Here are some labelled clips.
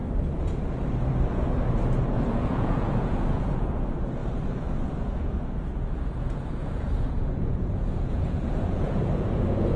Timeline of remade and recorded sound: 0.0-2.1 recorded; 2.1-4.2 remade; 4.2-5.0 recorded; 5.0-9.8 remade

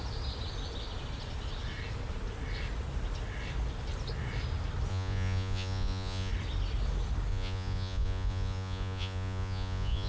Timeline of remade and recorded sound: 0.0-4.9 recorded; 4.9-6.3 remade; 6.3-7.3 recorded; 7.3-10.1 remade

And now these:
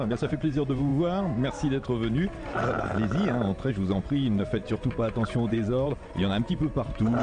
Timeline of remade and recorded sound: 0.0-0.9 remade; 0.9-3.7 recorded; 3.7-7.2 remade

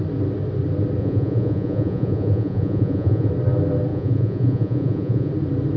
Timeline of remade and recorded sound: 0.0-1.0 recorded; 1.0-3.3 remade; 3.3-3.9 recorded; 3.9-5.3 remade; 5.3-5.8 recorded